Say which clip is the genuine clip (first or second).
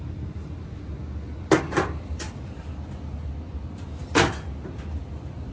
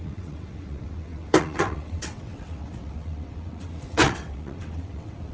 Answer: first